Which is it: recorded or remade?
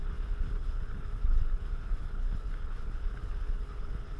remade